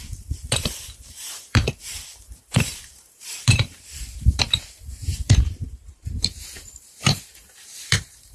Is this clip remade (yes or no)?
yes